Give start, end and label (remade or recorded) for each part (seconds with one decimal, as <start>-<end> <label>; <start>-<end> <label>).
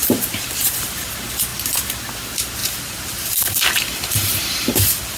0.0-1.1 remade; 1.1-2.6 recorded; 2.6-5.2 remade